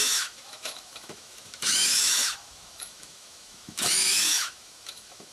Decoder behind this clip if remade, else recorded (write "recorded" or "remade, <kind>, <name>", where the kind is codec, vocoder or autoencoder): remade, autoencoder, DAC-VAE